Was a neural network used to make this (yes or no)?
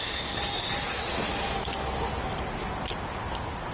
no